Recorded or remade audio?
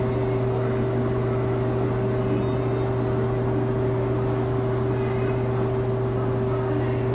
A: recorded